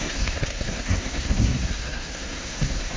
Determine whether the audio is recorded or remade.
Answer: remade